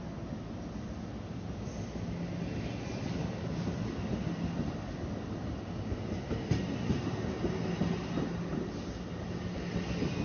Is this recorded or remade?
recorded